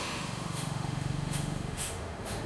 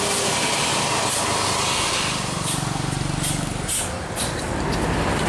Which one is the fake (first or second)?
first